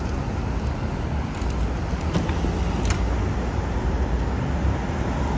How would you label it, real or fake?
real